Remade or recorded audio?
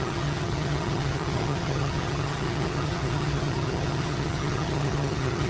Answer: remade